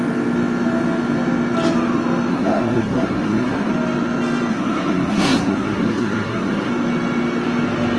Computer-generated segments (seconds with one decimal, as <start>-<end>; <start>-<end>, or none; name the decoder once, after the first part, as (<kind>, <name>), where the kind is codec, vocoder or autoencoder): 2.3-3.7 (codec, SNAC); 4.5-6.7